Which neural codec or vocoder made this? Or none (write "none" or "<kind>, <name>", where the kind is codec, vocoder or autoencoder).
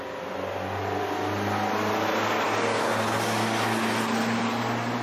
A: none